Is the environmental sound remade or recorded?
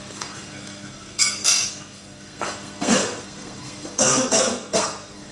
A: remade